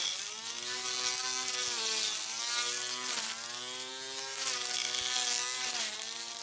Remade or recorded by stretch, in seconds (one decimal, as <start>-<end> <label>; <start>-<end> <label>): 0.0-6.4 recorded